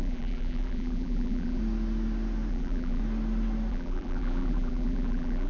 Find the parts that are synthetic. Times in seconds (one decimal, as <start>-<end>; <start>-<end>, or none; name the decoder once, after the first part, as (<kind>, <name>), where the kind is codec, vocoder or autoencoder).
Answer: 0.0-1.6 (vocoder, BigVGAN v2); 2.5-3.0; 3.7-5.5